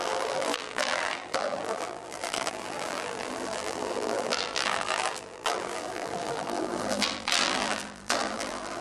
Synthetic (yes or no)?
yes